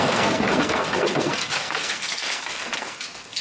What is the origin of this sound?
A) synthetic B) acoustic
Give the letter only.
A